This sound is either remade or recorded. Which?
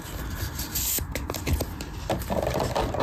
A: recorded